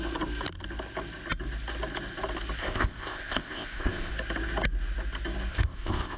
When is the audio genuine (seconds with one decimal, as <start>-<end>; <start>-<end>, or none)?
0.0-2.6; 4.1-5.5